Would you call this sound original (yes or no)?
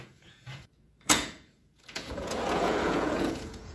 no